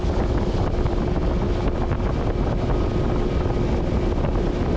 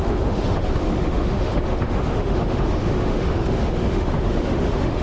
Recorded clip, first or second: first